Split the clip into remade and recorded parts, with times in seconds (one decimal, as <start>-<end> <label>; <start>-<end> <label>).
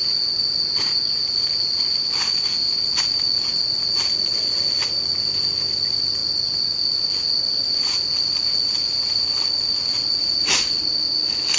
0.0-11.6 recorded